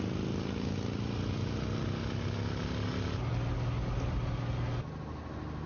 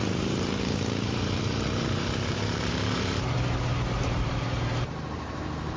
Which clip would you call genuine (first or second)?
first